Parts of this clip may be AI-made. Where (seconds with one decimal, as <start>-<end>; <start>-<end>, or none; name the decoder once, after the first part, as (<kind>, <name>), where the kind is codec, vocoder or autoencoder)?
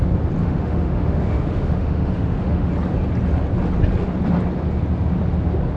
0.4-2.7 (autoencoder, DAC-VAE)